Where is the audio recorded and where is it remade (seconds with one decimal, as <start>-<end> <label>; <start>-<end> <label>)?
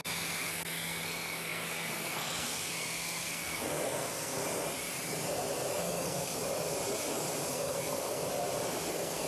0.0-4.4 remade; 4.4-5.7 recorded; 5.7-6.4 remade; 6.4-7.5 recorded; 7.5-8.2 remade; 8.2-8.9 recorded; 8.9-9.3 remade